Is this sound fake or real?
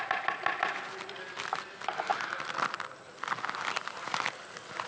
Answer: real